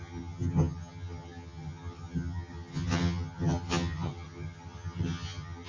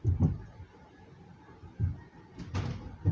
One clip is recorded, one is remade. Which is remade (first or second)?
first